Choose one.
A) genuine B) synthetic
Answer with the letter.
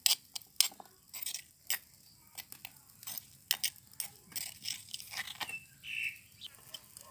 A